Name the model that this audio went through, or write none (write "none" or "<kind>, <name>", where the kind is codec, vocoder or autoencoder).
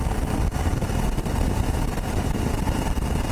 none